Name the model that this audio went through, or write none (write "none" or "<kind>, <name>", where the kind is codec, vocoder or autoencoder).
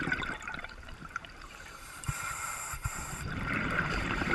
vocoder, BigVGAN v2